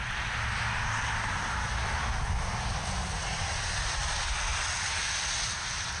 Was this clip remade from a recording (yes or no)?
no